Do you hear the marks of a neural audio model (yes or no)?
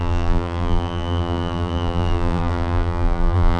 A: yes